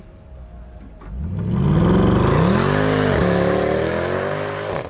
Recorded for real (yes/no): yes